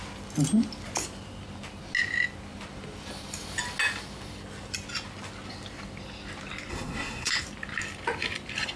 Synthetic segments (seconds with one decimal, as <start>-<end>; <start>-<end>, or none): 6.7-7.3